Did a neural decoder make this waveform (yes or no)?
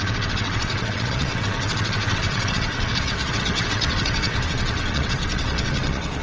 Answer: yes